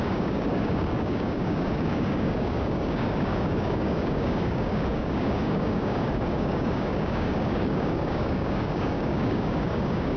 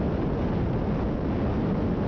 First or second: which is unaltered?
second